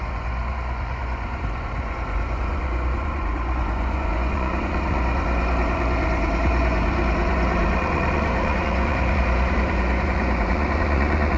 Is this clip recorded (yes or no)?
no